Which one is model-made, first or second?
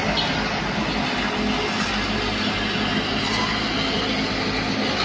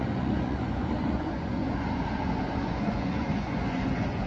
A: second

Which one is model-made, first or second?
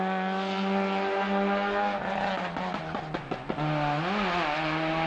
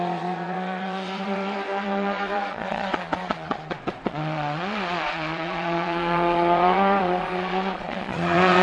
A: second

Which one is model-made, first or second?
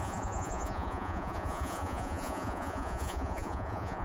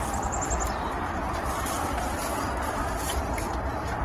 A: first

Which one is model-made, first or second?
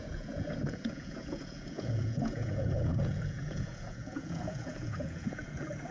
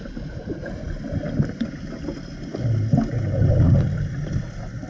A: first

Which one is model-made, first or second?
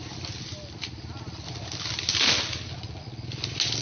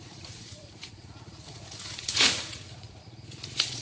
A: second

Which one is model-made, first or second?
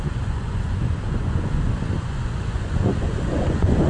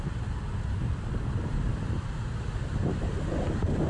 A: first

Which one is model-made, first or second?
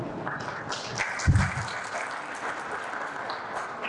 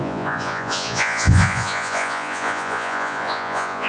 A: second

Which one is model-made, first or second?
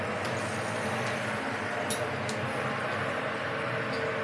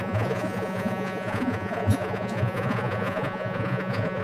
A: second